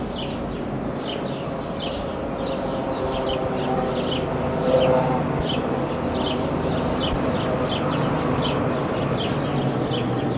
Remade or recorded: recorded